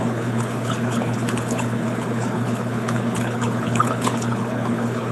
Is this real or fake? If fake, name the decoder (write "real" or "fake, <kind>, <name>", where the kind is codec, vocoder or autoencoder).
fake, codec, HILCodec